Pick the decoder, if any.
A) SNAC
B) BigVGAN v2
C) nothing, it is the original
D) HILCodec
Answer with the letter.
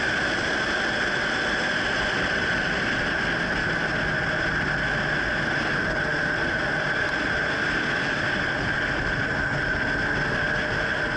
C